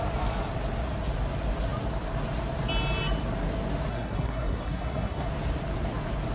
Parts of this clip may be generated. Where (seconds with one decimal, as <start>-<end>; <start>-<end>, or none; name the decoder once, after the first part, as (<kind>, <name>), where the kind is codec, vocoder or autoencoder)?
3.9-5.3 (codec, SNAC)